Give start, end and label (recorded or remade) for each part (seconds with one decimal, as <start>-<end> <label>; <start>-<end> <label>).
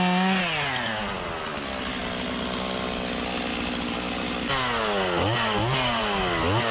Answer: 0.0-6.7 recorded